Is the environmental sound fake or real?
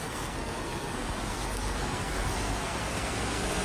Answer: fake